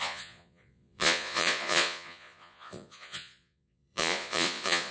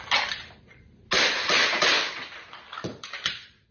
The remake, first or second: first